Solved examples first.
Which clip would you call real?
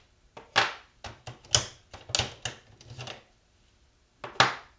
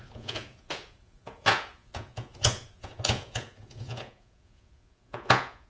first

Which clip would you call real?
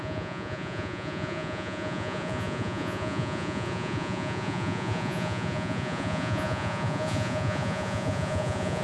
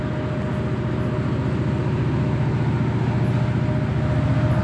second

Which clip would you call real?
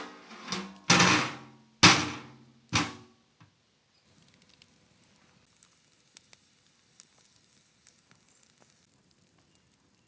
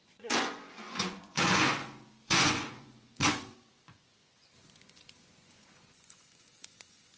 first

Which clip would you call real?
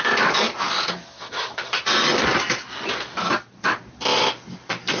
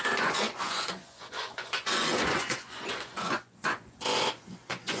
first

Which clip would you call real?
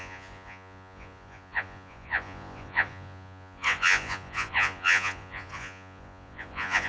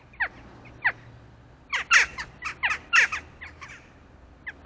second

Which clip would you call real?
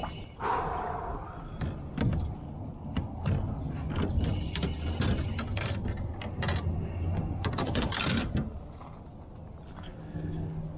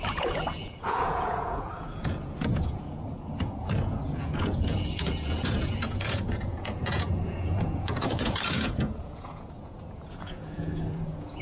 first